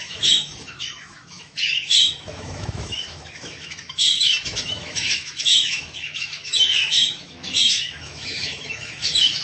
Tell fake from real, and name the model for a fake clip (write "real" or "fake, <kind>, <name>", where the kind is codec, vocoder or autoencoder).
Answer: fake, autoencoder, DAC-VAE